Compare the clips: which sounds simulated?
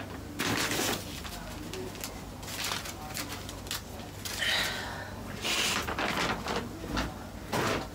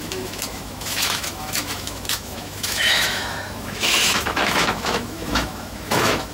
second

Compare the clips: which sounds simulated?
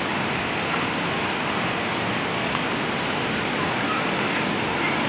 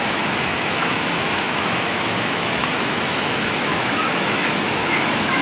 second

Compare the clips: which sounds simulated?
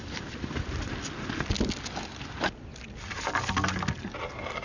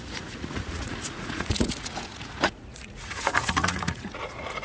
second